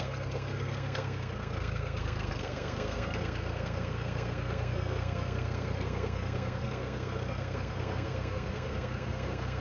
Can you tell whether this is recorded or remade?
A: remade